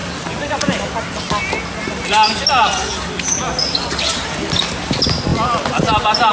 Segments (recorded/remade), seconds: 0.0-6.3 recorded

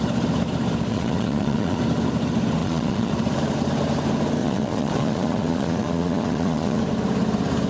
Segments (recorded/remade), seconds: 0.0-0.9 recorded; 0.9-1.8 remade; 1.8-2.6 recorded; 2.6-3.1 remade; 3.1-4.4 recorded; 4.4-6.8 remade; 6.8-7.7 recorded

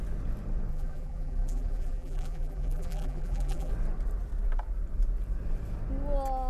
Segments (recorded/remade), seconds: 0.0-0.7 recorded; 0.7-3.7 remade; 3.7-6.5 recorded

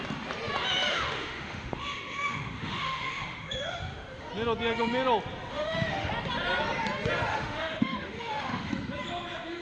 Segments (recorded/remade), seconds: 0.0-0.9 recorded; 0.9-4.3 remade; 4.3-5.5 recorded; 5.5-6.1 remade; 6.1-7.3 recorded; 7.3-8.7 remade; 8.7-9.6 recorded

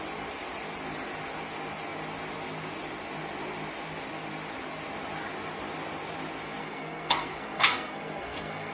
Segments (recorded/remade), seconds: 0.0-6.6 recorded; 6.6-8.7 remade

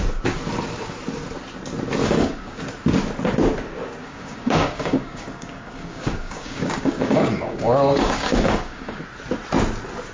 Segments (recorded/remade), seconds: 0.0-2.0 recorded; 2.0-2.6 remade; 2.6-4.0 recorded; 4.0-9.0 remade; 9.0-10.1 recorded

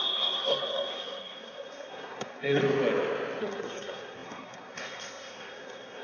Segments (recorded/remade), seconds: 0.0-2.6 remade; 2.6-3.4 recorded; 3.4-6.0 remade